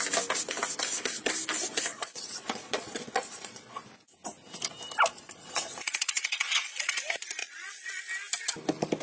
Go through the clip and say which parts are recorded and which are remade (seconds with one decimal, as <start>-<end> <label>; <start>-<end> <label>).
0.0-1.9 recorded; 1.9-3.8 remade; 3.8-5.1 recorded; 5.1-7.0 remade; 7.0-7.4 recorded; 7.4-8.0 remade; 8.0-9.0 recorded